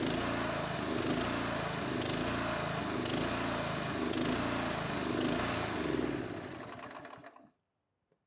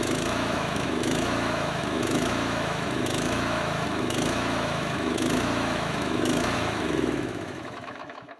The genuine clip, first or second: first